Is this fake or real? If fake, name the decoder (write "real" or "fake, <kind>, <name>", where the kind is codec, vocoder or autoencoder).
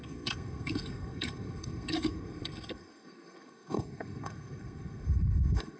fake, codec, SNAC